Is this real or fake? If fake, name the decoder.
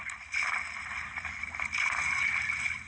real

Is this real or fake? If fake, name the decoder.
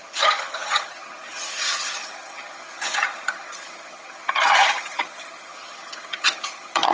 fake, vocoder, HiFi-GAN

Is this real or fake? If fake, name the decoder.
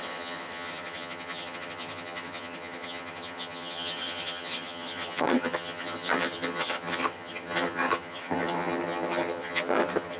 fake, vocoder, HiFi-GAN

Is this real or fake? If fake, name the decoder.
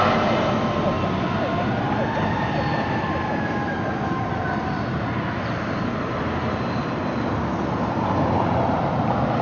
real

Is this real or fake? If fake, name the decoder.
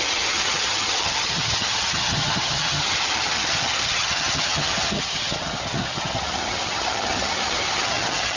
fake, vocoder, HiFi-GAN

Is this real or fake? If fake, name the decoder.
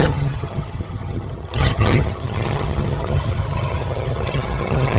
fake, vocoder, HiFi-GAN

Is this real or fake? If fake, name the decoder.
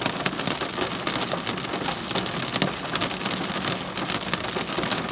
real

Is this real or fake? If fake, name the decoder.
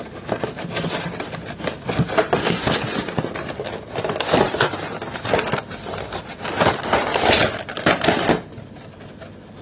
real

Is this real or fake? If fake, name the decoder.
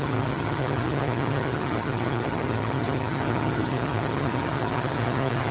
fake, vocoder, HiFi-GAN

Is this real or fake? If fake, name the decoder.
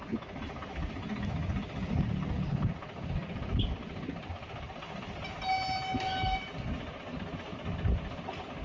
real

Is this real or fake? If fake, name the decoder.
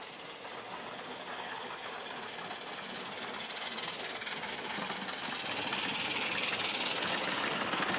real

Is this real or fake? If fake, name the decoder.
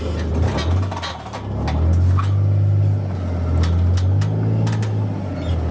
real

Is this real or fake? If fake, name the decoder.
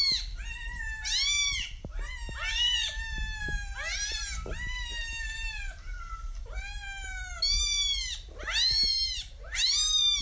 real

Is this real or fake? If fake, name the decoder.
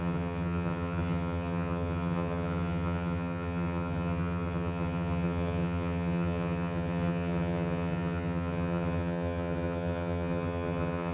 fake, vocoder, HiFi-GAN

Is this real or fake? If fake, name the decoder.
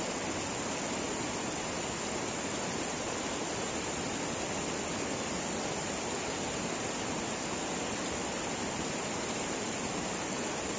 real